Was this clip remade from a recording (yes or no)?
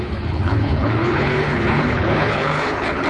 yes